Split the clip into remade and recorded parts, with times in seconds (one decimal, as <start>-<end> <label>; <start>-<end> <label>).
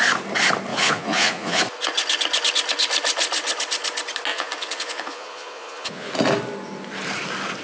0.0-0.7 recorded; 0.7-1.6 remade; 1.6-4.3 recorded; 4.3-6.1 remade; 6.1-7.6 recorded